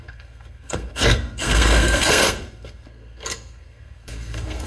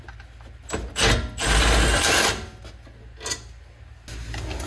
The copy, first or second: first